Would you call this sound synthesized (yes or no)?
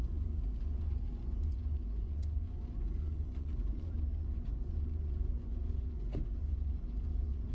yes